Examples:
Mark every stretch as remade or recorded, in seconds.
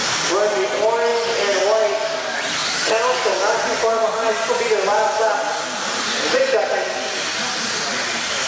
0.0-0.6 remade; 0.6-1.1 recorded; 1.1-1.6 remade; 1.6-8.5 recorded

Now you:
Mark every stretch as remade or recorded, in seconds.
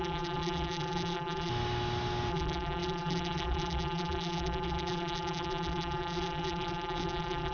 0.0-1.5 remade; 1.5-2.3 recorded; 2.3-7.5 remade